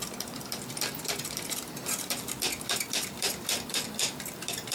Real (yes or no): no